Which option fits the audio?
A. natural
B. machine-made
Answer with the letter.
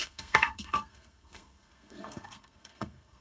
B